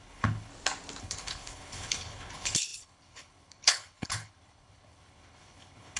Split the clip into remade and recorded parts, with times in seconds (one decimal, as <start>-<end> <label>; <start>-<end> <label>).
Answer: 0.0-0.5 remade; 0.5-1.0 recorded; 1.0-6.0 remade